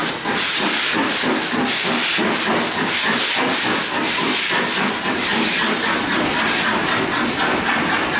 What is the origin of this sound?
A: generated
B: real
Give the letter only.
B